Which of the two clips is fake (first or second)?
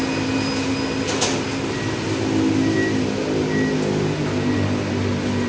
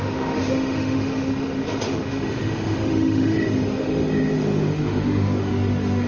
second